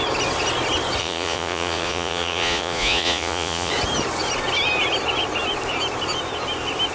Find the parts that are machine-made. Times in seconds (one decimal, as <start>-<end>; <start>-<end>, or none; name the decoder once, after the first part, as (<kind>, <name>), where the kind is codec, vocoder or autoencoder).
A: 1.0-3.7 (vocoder, Vocos)